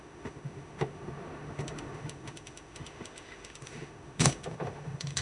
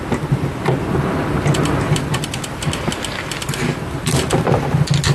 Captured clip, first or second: second